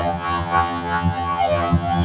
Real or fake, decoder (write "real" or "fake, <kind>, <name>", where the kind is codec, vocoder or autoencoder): fake, vocoder, HiFi-GAN